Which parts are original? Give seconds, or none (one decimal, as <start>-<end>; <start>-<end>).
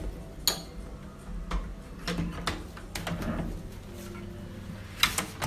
0.0-5.5